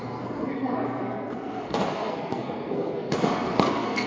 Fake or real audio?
fake